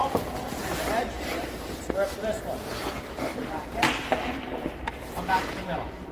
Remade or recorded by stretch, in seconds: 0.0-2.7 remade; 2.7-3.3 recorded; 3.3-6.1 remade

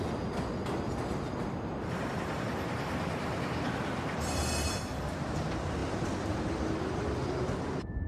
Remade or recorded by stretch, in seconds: 0.0-8.1 recorded